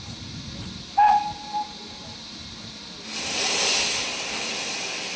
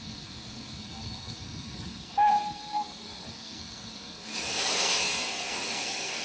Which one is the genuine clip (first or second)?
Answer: first